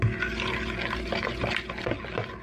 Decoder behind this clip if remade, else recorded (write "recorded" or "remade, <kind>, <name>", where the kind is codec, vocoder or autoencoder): recorded